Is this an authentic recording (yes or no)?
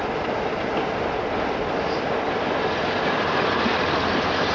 yes